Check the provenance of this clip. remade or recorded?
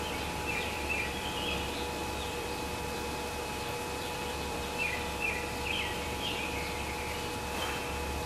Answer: remade